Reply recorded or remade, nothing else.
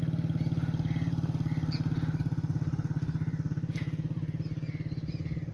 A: recorded